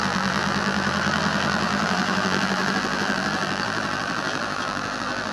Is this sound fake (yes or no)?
yes